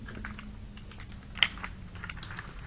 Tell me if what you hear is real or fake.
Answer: real